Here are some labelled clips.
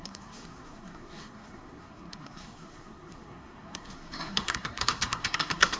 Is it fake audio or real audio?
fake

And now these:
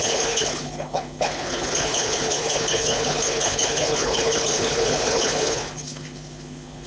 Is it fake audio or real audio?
fake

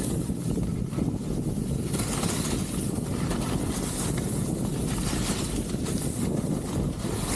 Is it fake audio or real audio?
real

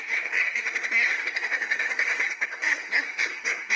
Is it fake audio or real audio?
fake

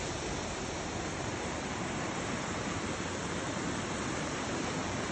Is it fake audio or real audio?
fake